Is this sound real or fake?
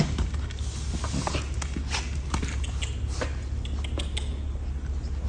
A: real